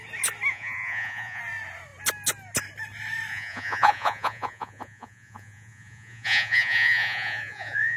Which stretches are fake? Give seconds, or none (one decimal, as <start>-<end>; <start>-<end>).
0.5-1.4; 3.3-8.0